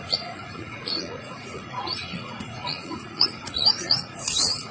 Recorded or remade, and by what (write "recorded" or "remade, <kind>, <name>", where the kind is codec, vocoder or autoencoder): remade, vocoder, Vocos